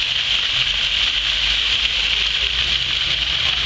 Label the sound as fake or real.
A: fake